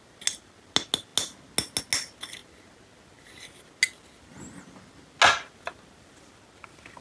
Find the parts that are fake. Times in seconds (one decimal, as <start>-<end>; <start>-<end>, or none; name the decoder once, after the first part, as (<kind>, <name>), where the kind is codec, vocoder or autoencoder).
none